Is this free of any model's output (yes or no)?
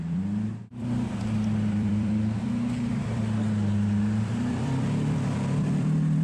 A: no